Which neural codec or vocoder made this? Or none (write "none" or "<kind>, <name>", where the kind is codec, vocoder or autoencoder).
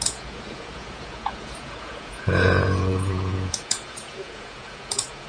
vocoder, Vocos